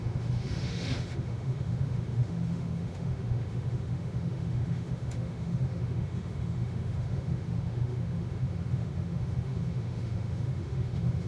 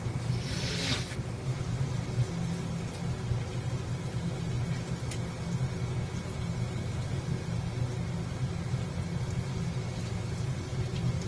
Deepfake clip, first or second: first